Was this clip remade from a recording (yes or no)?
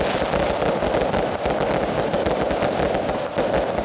no